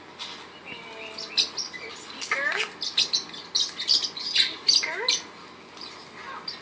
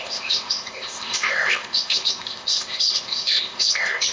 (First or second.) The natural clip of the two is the first